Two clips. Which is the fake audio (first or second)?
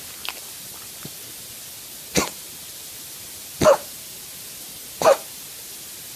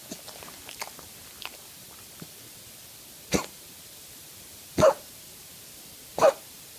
second